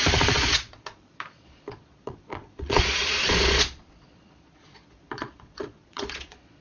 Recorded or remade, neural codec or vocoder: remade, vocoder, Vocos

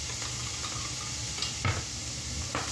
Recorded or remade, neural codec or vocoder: recorded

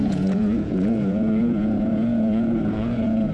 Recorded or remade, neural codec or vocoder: remade, vocoder, Vocos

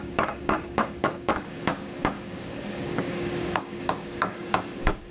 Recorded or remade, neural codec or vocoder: remade, codec, DAC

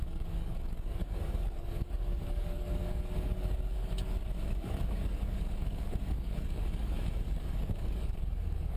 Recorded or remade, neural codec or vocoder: remade, codec, DAC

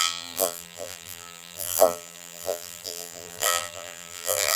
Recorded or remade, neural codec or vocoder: remade, vocoder, BigVGAN v2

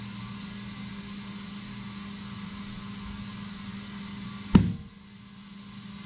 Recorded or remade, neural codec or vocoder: recorded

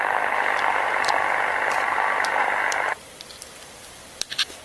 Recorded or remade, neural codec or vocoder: remade, vocoder, BigVGAN v2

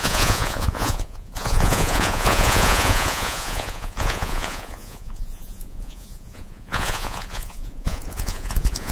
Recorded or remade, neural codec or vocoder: remade, vocoder, Vocos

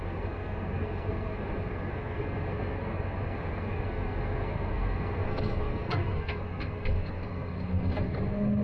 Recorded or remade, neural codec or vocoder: remade, codec, SNAC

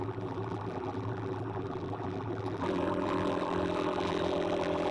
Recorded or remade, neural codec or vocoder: remade, vocoder, BigVGAN v2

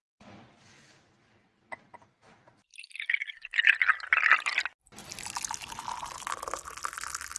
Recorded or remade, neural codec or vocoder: recorded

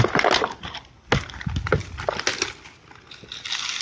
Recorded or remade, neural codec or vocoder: recorded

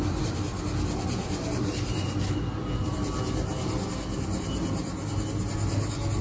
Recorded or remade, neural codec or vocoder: recorded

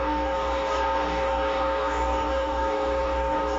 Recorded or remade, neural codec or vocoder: remade, codec, DAC